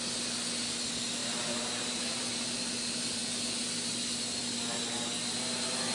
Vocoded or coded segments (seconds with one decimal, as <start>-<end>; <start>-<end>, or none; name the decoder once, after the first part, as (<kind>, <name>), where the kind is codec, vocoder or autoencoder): 1.2-2.2 (vocoder, BigVGAN v2)